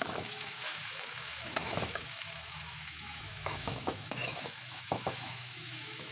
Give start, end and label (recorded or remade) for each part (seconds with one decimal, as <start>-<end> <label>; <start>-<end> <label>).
0.0-6.1 remade